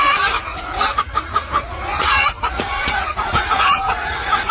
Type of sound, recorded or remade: remade